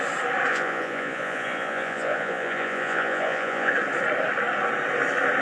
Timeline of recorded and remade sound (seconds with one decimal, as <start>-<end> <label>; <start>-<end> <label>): 0.0-0.5 recorded; 0.5-3.7 remade; 3.7-5.4 recorded